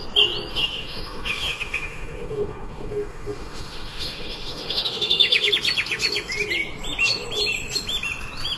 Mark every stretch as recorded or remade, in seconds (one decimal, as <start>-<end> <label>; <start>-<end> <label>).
0.0-0.5 recorded; 0.5-5.5 remade; 5.5-8.6 recorded